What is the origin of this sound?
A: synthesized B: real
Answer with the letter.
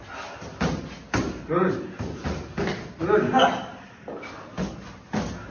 B